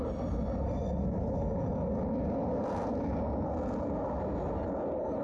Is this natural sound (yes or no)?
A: yes